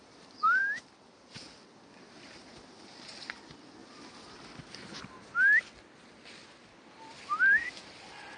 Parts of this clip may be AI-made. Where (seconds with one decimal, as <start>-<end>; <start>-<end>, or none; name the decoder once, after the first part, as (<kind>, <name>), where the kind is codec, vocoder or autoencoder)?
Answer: none